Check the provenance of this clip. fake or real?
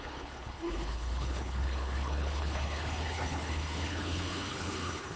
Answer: fake